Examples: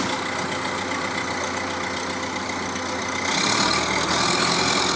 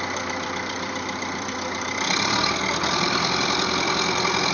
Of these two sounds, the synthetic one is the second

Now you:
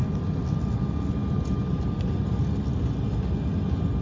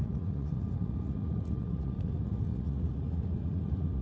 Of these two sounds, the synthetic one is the second